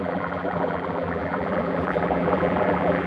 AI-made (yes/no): yes